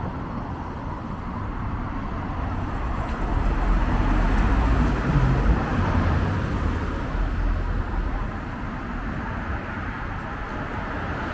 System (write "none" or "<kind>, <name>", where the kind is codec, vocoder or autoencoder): none